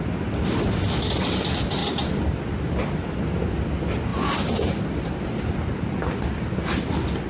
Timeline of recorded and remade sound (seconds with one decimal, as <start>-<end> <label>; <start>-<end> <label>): 0.0-1.8 recorded; 1.8-2.8 remade; 2.8-4.1 recorded; 4.1-5.4 remade; 5.4-7.3 recorded

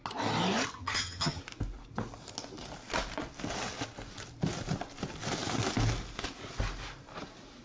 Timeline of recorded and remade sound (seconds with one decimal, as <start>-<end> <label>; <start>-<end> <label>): 0.0-0.8 recorded; 0.8-1.4 remade; 1.4-7.6 recorded

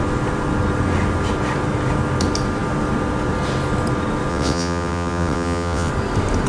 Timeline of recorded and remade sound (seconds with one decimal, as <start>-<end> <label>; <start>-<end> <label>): 0.0-4.3 recorded; 4.3-5.9 remade; 5.9-6.5 recorded

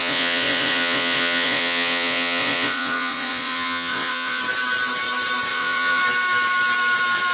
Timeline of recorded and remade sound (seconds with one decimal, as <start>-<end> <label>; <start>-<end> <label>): 0.0-4.4 remade; 4.4-5.5 recorded; 5.5-6.0 remade; 6.0-7.3 recorded

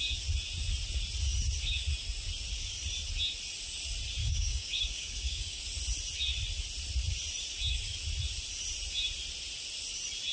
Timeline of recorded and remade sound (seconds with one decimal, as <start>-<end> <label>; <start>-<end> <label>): 0.0-4.2 recorded; 4.2-5.6 remade; 5.6-10.3 recorded

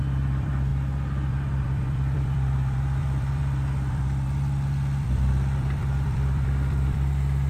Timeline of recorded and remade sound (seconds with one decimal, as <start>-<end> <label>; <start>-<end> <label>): 0.0-7.5 remade